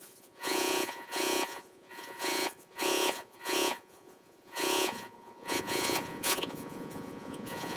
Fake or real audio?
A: fake